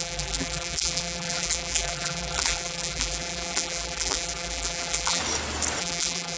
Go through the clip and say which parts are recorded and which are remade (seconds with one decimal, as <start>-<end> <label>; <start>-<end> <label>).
0.0-5.2 remade; 5.2-5.8 recorded; 5.8-6.4 remade